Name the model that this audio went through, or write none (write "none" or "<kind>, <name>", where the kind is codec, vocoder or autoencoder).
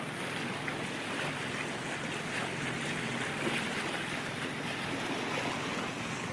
none